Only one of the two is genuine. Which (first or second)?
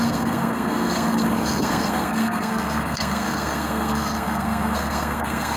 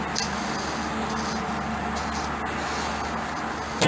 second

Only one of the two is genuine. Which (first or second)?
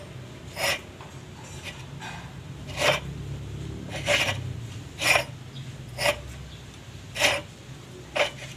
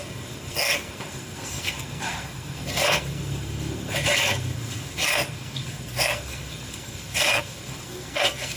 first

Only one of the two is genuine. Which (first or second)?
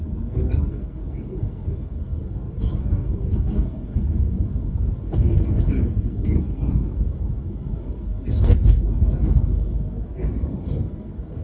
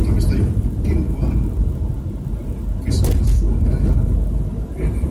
second